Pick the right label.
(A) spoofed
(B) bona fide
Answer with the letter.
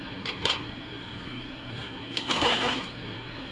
A